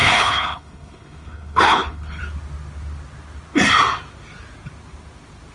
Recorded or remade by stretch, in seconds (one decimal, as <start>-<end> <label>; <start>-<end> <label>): 0.0-2.2 remade; 2.2-5.5 recorded